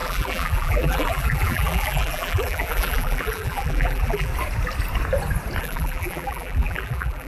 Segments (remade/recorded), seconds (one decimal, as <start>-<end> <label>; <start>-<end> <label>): 0.0-4.3 remade; 4.3-5.6 recorded; 5.6-7.3 remade